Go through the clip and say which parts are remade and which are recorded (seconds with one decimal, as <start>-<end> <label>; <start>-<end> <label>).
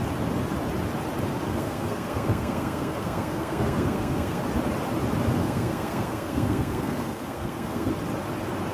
0.0-1.5 recorded; 1.5-4.4 remade; 4.4-5.4 recorded; 5.4-7.9 remade; 7.9-8.7 recorded